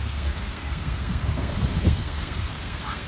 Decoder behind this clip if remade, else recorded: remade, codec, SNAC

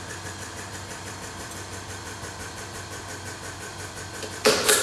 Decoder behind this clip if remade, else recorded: remade, vocoder, BigVGAN v2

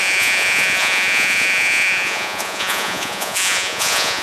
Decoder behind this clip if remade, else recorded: remade, vocoder, Vocos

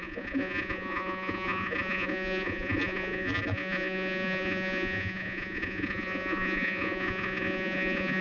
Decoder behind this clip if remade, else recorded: remade, vocoder, Vocos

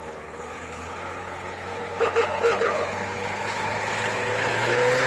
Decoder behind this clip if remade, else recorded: remade, codec, HILCodec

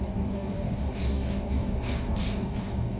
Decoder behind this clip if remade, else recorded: remade, codec, DAC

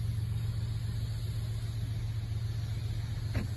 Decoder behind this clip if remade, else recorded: recorded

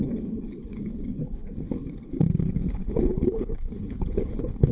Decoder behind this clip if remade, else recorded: remade, codec, HILCodec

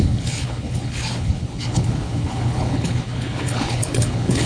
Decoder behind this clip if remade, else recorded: remade, codec, HILCodec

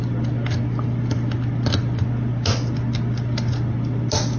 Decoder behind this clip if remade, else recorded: recorded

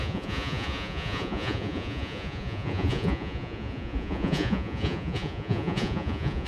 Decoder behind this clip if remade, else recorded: remade, vocoder, Vocos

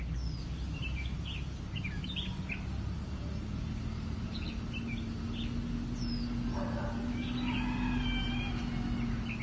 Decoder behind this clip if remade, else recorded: recorded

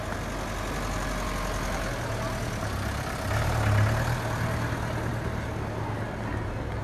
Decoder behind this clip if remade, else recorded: recorded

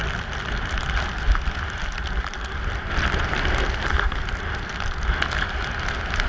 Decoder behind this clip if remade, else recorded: recorded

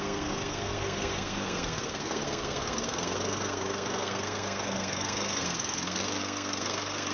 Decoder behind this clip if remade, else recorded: remade, codec, SNAC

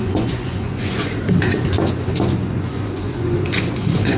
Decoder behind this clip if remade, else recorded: remade, vocoder, Vocos